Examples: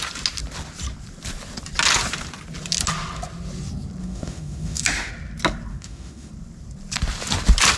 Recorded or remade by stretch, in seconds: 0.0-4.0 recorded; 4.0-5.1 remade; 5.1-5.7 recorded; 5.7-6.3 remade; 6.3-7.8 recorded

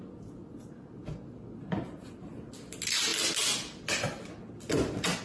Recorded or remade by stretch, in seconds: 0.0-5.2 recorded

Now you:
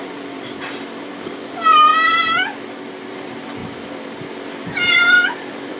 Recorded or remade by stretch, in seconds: 0.0-1.9 remade; 1.9-3.1 recorded; 3.1-5.8 remade

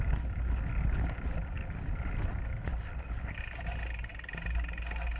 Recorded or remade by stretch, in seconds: 0.0-5.2 recorded

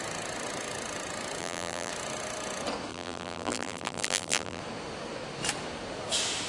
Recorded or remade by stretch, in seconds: 0.0-1.4 recorded; 1.4-1.9 remade; 1.9-2.9 recorded; 2.9-4.6 remade; 4.6-6.5 recorded

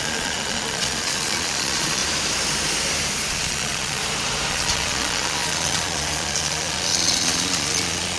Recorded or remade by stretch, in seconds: 0.0-2.0 remade; 2.0-3.3 recorded; 3.3-4.0 remade; 4.0-4.5 recorded; 4.5-8.2 remade

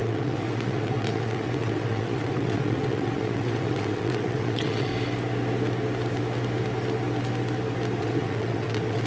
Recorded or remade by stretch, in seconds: 0.0-4.9 remade; 4.9-8.0 recorded; 8.0-9.1 remade

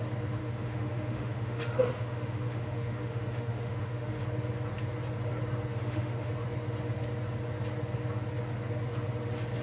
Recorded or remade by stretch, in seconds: 0.0-0.4 recorded; 0.4-4.2 remade; 4.2-5.7 recorded; 5.7-6.3 remade; 6.3-9.6 recorded